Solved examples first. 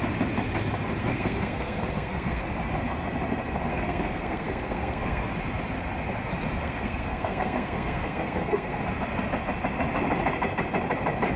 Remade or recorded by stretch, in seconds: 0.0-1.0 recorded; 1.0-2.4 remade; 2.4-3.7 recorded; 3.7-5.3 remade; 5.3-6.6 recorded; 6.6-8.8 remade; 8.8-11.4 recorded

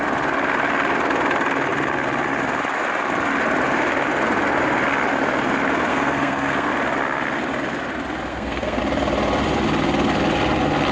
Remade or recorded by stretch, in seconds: 0.0-5.9 recorded; 5.9-6.7 remade; 6.7-8.3 recorded; 8.3-8.8 remade; 8.8-10.9 recorded

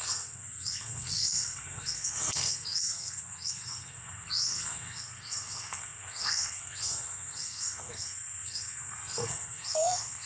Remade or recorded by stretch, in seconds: 0.0-10.3 remade

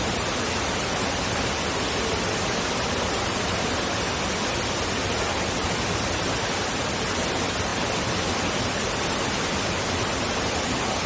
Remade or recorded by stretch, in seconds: 0.0-11.1 recorded

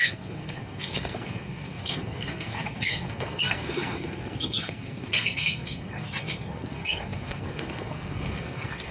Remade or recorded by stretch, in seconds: 0.0-8.9 remade

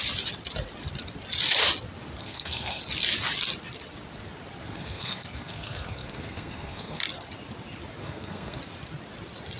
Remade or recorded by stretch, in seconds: 0.0-2.2 recorded; 2.2-2.8 remade; 2.8-4.6 recorded; 4.6-7.0 remade; 7.0-8.0 recorded; 8.0-8.6 remade; 8.6-9.6 recorded

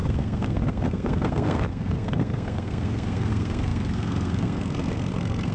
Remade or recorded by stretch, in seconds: 0.0-5.5 remade

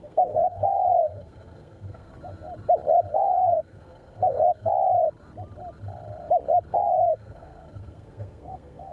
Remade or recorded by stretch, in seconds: 0.0-2.1 remade; 2.1-3.1 recorded; 3.1-4.7 remade; 4.7-6.7 recorded; 6.7-8.9 remade